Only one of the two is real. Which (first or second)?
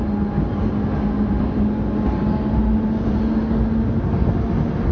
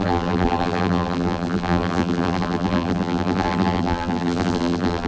first